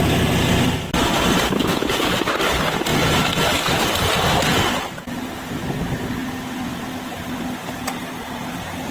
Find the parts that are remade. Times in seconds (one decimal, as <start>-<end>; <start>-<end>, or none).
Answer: none